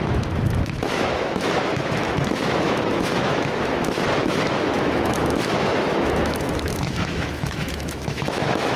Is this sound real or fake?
fake